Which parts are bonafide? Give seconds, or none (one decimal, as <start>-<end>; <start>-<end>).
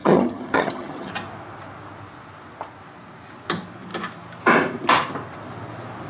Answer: 1.1-6.1